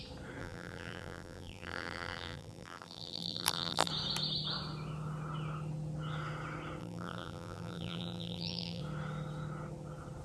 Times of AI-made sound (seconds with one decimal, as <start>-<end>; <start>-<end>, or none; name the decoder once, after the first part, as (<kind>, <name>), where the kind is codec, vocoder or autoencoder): 0.4-3.9 (vocoder, BigVGAN v2); 6.8-8.8